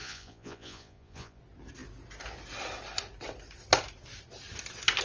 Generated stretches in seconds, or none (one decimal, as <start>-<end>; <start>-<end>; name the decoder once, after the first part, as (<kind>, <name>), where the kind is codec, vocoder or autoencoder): 0.0-1.4 (vocoder, Vocos)